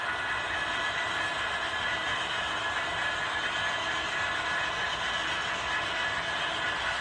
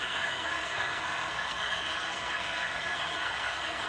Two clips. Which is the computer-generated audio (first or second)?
second